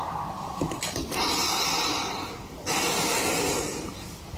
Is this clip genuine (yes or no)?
yes